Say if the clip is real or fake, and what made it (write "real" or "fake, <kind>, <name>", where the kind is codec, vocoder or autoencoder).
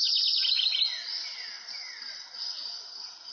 real